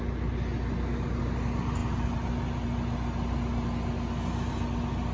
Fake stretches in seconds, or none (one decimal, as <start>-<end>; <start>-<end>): none